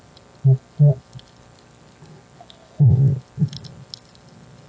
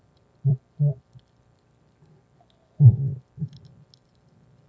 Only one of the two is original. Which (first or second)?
first